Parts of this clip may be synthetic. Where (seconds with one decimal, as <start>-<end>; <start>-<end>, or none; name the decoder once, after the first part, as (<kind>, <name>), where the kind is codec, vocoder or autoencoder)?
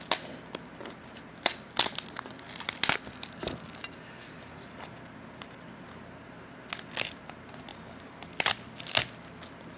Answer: none